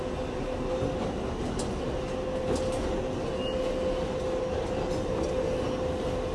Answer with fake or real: real